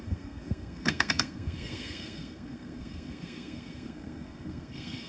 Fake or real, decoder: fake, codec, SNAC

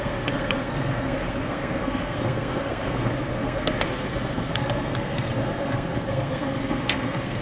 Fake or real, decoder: fake, codec, SNAC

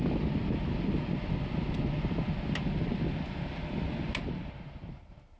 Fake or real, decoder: real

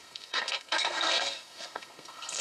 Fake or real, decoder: fake, codec, SNAC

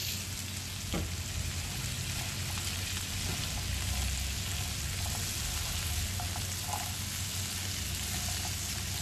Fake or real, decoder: real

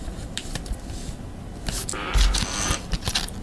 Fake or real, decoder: real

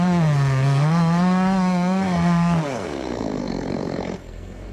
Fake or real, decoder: fake, codec, SNAC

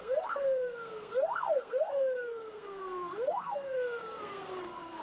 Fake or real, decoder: fake, codec, SNAC